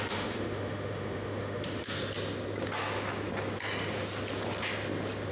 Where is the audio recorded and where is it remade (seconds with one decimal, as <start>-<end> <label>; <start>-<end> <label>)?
0.0-2.0 remade; 2.0-5.3 recorded